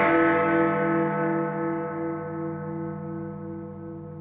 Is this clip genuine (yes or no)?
yes